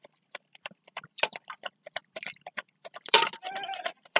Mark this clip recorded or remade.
remade